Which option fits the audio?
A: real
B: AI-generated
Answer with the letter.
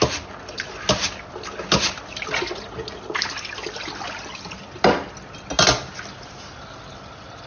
A